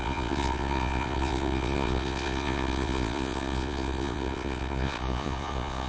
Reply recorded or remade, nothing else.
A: remade